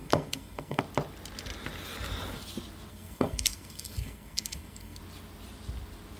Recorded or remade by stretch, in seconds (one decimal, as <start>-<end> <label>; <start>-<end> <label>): 0.0-0.8 remade; 0.8-2.9 recorded; 2.9-5.0 remade; 5.0-6.2 recorded

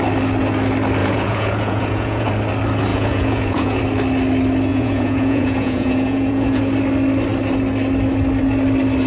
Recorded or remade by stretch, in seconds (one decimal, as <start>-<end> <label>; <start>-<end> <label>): 0.0-1.0 recorded; 1.0-2.3 remade; 2.3-2.9 recorded; 2.9-3.8 remade; 3.8-4.7 recorded; 4.7-6.6 remade; 6.6-9.1 recorded

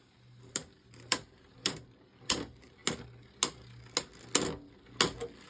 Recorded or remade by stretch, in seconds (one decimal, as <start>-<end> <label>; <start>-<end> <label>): 0.0-2.8 remade; 2.8-5.5 recorded